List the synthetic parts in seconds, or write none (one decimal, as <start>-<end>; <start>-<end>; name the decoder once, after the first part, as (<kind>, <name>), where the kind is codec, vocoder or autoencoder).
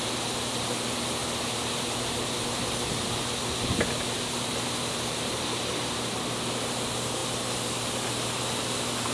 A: 0.0-9.1 (vocoder, BigVGAN v2)